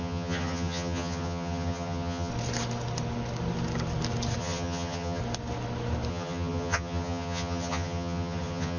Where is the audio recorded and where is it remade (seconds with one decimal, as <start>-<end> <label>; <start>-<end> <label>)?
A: 0.0-2.3 remade; 2.3-4.4 recorded; 4.4-5.2 remade; 5.2-6.1 recorded; 6.1-8.8 remade